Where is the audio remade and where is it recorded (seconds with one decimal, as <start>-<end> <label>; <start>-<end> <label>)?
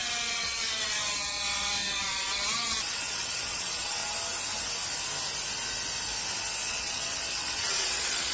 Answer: 0.0-4.0 remade; 4.0-6.7 recorded; 6.7-8.3 remade